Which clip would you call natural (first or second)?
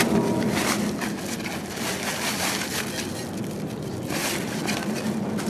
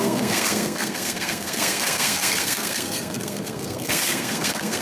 first